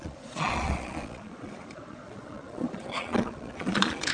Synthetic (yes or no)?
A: yes